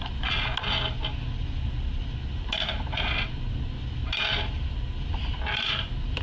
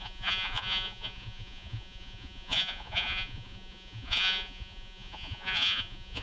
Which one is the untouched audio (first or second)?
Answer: first